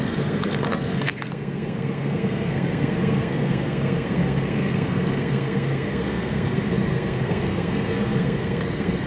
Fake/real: fake